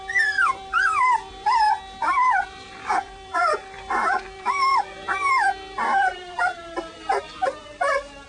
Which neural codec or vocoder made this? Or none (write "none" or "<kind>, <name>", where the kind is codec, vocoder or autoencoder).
vocoder, BigVGAN v2